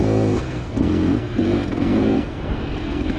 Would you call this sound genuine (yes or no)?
no